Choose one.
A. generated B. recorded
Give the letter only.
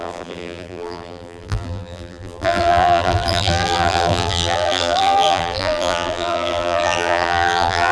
A